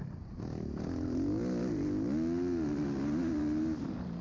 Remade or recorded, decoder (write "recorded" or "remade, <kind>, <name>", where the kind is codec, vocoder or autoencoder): recorded